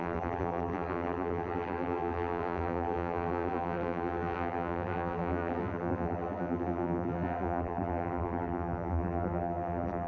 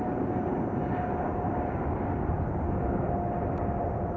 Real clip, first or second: second